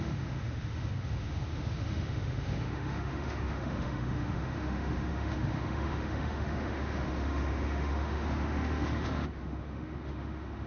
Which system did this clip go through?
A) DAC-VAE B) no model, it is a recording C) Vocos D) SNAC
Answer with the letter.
A